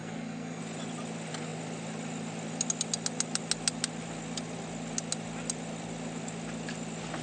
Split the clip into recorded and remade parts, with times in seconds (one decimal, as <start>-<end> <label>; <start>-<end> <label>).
0.0-0.6 remade; 0.6-7.2 recorded

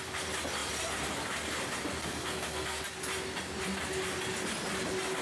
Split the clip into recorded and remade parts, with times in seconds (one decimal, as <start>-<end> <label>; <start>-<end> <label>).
0.0-2.0 recorded; 2.0-2.8 remade; 2.8-5.2 recorded

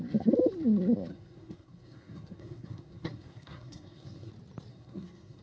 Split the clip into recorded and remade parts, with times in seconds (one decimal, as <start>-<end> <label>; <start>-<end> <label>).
0.0-1.1 recorded; 1.1-4.3 remade; 4.3-4.7 recorded; 4.7-5.4 remade

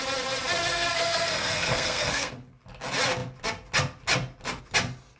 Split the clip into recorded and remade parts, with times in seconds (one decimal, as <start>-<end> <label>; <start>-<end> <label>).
0.0-0.7 recorded; 0.7-2.3 remade; 2.3-5.2 recorded